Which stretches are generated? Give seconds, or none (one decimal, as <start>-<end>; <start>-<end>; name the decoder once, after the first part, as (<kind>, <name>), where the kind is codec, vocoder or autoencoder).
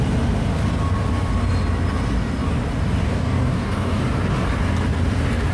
3.0-4.0 (codec, DAC)